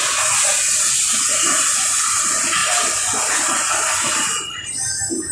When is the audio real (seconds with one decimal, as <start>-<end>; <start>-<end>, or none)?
0.0-5.3